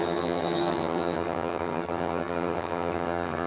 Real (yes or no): no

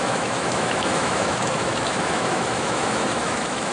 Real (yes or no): no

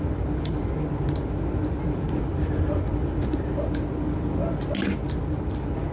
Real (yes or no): yes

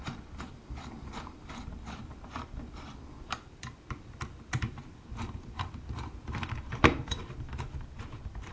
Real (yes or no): no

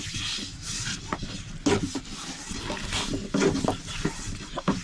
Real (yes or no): yes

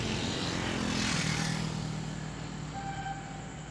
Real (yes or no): yes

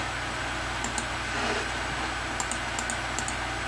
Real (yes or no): yes